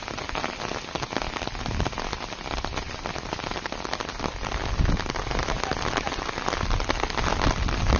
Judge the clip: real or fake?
real